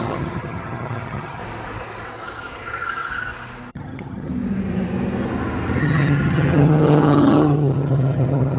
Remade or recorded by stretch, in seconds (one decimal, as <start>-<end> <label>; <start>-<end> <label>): 0.0-1.4 remade; 1.4-3.7 recorded; 3.7-4.3 remade; 4.3-5.8 recorded; 5.8-8.6 remade